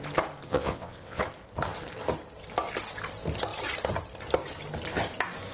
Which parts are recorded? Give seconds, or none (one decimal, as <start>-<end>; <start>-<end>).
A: 0.0-0.5; 1.2-5.5

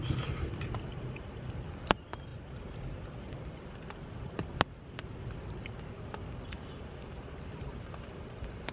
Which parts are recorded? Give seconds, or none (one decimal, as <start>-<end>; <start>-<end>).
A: 0.0-8.7

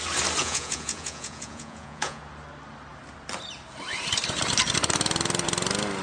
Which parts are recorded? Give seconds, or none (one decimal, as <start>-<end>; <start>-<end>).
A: 0.0-0.4; 2.2-6.0

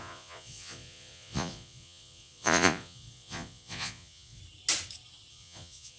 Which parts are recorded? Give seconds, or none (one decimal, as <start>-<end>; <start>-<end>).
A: 4.4-5.3